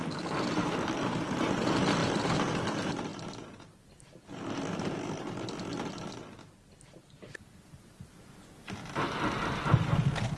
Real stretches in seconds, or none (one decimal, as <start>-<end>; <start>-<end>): 0.0-10.4